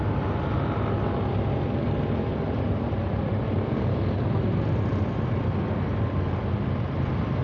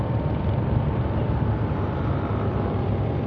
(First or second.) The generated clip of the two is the second